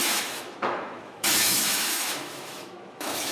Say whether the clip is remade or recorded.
remade